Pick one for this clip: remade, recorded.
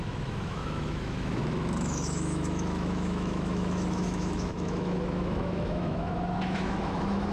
remade